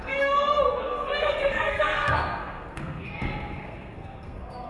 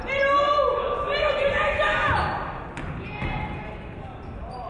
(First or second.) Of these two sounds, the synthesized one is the first